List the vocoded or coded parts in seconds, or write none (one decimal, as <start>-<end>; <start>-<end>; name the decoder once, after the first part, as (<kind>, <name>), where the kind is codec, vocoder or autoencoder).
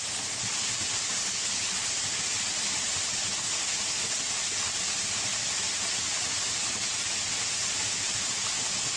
1.2-1.9 (codec, HILCodec)